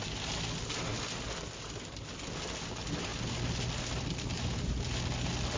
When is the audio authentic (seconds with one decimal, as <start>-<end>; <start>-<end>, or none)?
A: 0.0-5.6